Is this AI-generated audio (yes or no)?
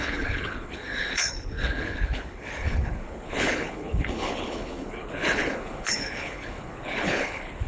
yes